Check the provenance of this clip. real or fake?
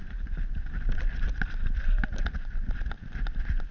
real